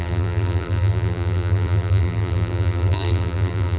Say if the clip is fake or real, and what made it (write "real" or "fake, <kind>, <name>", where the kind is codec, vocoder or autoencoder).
fake, vocoder, BigVGAN v2